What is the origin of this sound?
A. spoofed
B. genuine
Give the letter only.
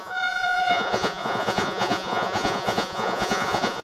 A